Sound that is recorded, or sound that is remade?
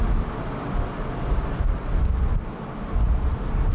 recorded